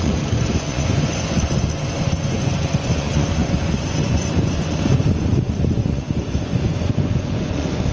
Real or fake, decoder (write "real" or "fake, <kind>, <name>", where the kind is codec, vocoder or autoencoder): fake, vocoder, Vocos